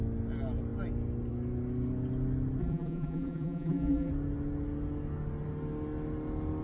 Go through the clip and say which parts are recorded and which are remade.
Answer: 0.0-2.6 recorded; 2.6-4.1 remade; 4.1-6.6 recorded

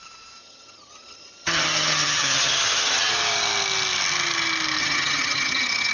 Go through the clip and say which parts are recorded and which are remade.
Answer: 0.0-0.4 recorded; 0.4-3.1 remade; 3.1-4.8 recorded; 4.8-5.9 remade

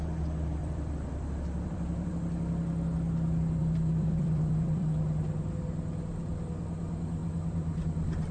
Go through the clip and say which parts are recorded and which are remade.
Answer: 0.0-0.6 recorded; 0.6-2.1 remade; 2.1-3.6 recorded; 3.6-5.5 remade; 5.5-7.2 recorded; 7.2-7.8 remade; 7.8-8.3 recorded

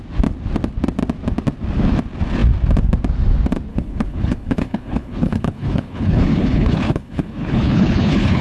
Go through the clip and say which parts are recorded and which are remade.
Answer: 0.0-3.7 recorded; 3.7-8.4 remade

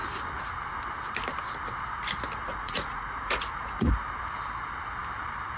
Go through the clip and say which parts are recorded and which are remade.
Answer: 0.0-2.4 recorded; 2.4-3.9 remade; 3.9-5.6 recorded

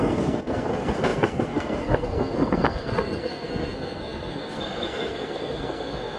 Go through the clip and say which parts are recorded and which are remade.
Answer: 0.0-6.2 remade